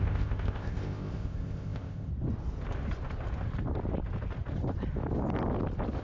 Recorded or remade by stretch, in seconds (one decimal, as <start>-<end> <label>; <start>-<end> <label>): 0.0-2.1 remade; 2.1-6.0 recorded